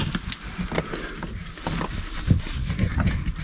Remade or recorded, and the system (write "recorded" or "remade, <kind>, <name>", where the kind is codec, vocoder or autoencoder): recorded